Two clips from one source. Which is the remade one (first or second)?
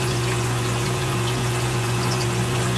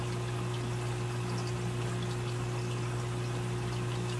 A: first